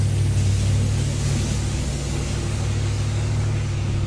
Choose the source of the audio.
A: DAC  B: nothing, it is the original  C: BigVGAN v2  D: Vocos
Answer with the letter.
A